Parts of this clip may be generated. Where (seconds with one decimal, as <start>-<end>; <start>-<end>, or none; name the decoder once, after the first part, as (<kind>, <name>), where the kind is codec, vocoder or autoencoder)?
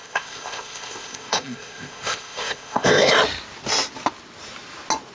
0.0-3.1 (codec, ZipCodec)